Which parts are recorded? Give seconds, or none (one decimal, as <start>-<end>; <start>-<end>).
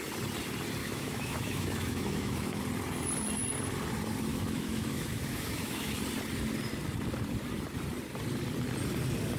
0.0-0.8; 2.6-4.3; 5.9-9.4